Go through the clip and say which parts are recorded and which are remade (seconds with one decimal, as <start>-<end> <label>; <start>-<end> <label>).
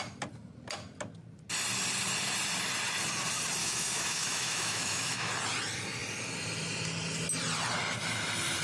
0.0-3.6 recorded; 3.6-5.3 remade; 5.3-8.6 recorded